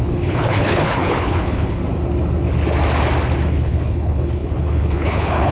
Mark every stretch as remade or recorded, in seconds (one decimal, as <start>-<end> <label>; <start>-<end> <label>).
0.0-1.8 remade; 1.8-3.5 recorded; 3.5-5.5 remade